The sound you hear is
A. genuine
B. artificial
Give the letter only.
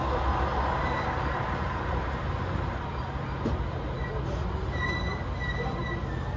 A